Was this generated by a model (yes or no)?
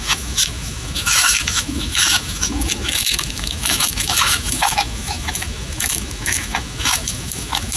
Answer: yes